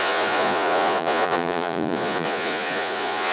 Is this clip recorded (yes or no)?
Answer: no